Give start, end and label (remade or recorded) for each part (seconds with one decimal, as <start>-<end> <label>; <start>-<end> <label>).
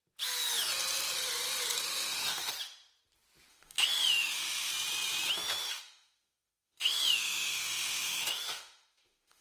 0.0-1.9 recorded; 1.9-2.5 remade; 2.5-3.5 recorded; 3.5-4.7 remade; 4.7-5.6 recorded; 5.6-9.4 remade